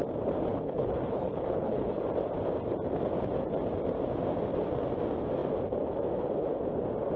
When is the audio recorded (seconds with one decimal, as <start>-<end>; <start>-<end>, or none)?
0.0-0.5; 2.0-7.2